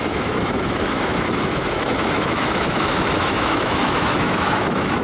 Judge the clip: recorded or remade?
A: remade